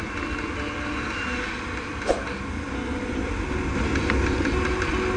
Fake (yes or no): no